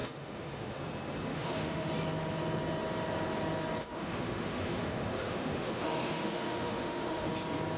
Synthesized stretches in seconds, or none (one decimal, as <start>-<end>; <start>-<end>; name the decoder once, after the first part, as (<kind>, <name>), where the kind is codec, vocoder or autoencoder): 0.0-0.8 (autoencoder, DAC-VAE); 1.3-1.9; 3.8-7.3